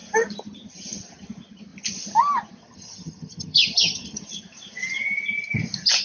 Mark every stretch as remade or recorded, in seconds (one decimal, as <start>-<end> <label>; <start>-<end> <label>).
0.0-2.6 recorded; 2.6-4.2 remade; 4.2-6.0 recorded